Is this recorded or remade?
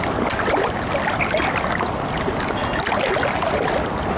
recorded